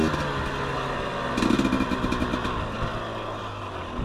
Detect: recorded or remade recorded